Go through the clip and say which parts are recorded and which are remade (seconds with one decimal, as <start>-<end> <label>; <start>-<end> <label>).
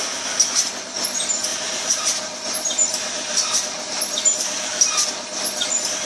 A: 0.0-1.5 recorded; 1.5-4.8 remade; 4.8-6.1 recorded